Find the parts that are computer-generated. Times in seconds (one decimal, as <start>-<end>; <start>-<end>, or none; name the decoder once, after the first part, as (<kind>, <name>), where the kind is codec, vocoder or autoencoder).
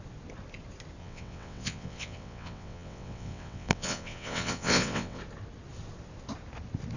1.0-5.2 (vocoder, WaveNeXt)